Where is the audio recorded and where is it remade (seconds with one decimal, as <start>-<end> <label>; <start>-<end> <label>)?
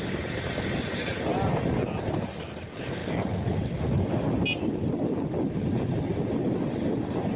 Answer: 0.0-1.3 remade; 1.3-2.0 recorded; 2.0-3.0 remade; 3.0-6.8 recorded; 6.8-7.4 remade